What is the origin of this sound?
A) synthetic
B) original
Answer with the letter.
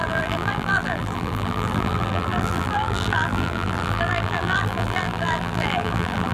A